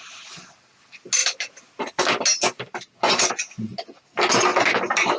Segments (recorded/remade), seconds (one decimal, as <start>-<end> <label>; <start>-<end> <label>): 0.0-5.2 recorded